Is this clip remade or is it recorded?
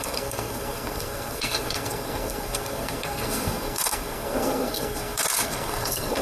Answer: remade